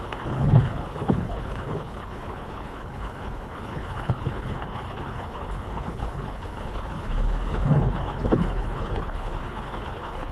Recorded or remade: remade